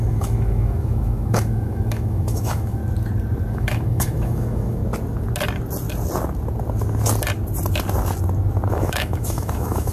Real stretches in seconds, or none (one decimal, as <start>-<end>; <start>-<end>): 2.8-3.5; 4.8-8.7